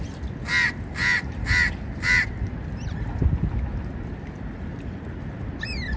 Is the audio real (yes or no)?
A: yes